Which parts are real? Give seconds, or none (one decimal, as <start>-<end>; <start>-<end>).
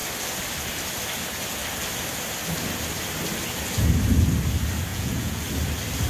0.0-4.9; 5.4-6.1